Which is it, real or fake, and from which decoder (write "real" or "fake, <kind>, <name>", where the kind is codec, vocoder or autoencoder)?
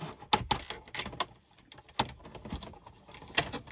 real